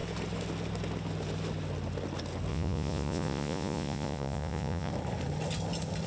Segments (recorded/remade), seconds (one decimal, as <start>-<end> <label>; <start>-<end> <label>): 0.0-2.5 recorded; 2.5-4.9 remade; 4.9-6.1 recorded